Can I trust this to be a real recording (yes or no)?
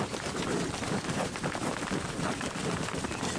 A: yes